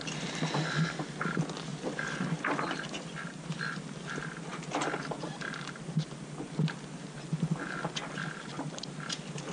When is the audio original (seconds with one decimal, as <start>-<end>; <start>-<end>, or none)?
0.0-9.5